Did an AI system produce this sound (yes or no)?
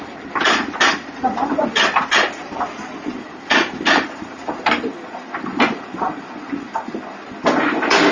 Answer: no